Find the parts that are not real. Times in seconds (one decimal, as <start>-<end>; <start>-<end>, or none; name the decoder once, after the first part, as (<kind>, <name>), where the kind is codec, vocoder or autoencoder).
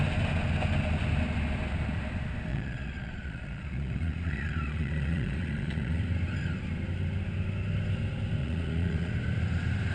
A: 2.5-6.0 (vocoder, Vocos); 8.4-9.1